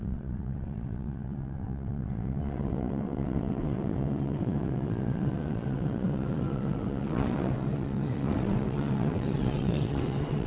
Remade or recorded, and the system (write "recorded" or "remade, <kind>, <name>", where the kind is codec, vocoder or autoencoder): remade, vocoder, WaveNeXt